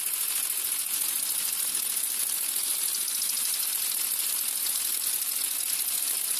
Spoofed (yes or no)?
no